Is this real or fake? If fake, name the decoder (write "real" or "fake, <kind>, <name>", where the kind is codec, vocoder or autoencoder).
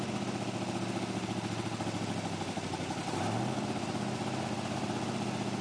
real